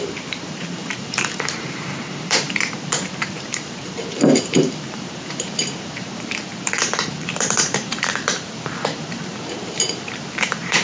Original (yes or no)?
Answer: no